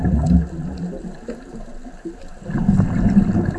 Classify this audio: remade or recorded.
recorded